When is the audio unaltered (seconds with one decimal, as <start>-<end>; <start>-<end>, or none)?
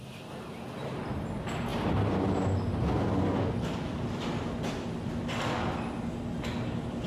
0.0-7.1